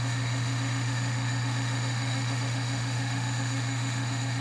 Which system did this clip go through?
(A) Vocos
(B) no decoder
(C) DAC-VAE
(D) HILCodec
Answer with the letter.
C